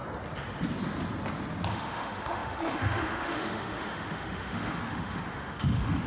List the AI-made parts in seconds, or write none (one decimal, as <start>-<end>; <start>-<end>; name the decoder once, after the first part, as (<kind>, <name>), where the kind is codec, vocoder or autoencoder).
1.7-6.1 (autoencoder, DAC-VAE)